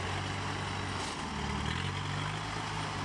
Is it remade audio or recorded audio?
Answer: recorded